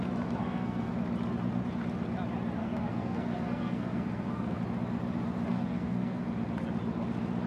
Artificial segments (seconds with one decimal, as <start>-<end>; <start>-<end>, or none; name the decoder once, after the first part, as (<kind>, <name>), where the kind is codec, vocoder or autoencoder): 0.4-0.9 (codec, SNAC); 2.6-4.6; 5.5-6.2